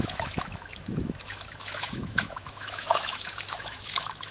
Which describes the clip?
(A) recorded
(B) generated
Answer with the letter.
B